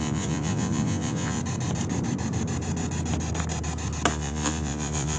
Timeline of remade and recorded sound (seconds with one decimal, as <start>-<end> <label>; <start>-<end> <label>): 0.0-1.4 remade; 1.4-4.1 recorded; 4.1-5.2 remade